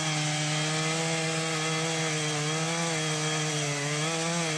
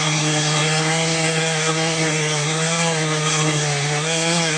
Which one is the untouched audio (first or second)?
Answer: first